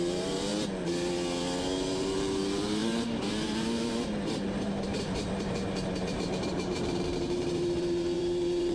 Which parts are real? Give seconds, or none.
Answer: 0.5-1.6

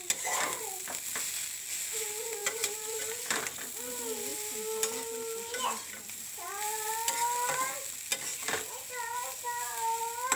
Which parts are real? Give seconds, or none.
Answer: 0.0-2.4; 3.0-10.4

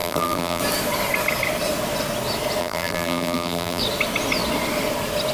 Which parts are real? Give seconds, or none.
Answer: 0.6-2.6; 3.8-5.3

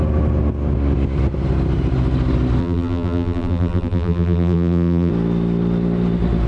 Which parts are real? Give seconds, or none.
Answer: 0.0-2.6; 5.1-6.5

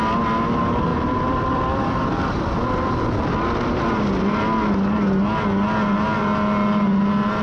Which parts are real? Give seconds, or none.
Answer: 0.0-0.9; 3.8-7.4

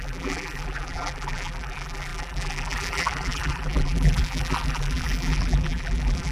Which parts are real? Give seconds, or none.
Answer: none

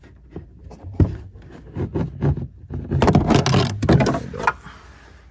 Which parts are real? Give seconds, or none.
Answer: 0.0-0.6; 1.6-5.3